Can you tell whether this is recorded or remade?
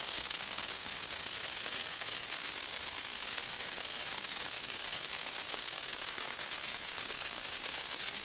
remade